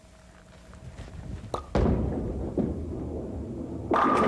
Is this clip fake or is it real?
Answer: real